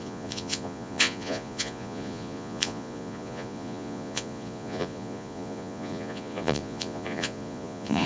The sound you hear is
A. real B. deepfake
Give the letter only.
B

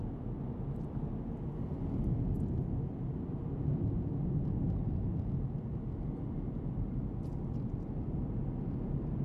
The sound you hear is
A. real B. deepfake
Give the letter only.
A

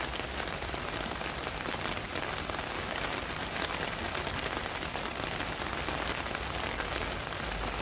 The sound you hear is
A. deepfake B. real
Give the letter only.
B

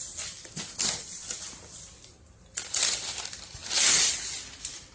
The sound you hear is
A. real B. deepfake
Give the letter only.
A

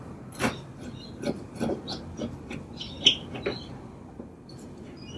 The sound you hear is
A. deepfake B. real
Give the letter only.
B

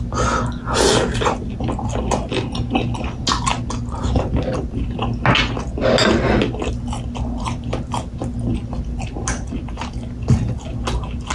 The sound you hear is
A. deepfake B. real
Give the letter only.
B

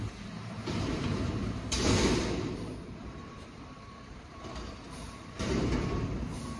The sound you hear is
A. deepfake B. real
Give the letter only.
A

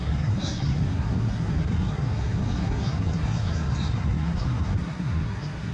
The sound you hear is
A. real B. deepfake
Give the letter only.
B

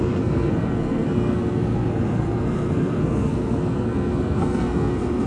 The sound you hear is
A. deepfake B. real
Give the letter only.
A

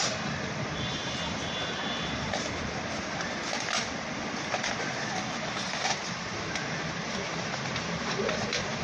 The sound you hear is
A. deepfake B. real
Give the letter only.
A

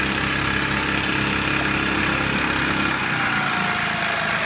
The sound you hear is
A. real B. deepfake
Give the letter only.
A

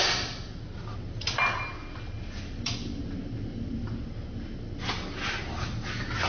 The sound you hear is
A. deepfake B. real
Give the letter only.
B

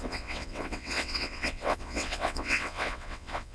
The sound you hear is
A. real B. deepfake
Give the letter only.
B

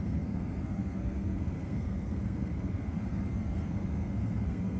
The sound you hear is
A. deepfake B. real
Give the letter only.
A